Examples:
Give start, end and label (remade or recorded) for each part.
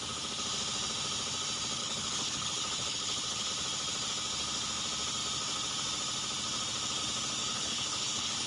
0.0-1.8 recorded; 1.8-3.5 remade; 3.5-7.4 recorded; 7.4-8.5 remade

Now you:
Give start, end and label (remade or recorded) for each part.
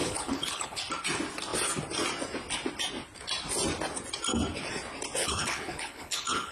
0.0-0.8 remade; 0.8-5.2 recorded; 5.2-6.5 remade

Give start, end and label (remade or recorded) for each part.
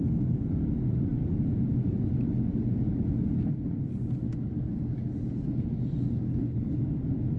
0.0-6.3 recorded; 6.3-6.8 remade; 6.8-7.4 recorded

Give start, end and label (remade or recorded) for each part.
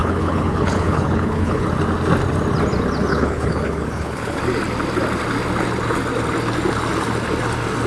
0.0-1.7 remade; 1.7-3.1 recorded; 3.1-4.4 remade; 4.4-7.9 recorded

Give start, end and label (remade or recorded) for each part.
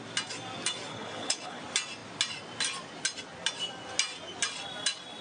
0.0-0.9 recorded; 0.9-1.6 remade; 1.6-5.2 recorded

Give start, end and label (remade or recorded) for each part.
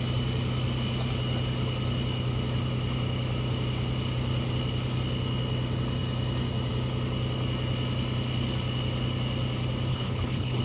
0.0-9.9 recorded; 9.9-10.6 remade